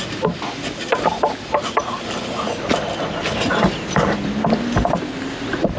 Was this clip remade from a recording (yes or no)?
no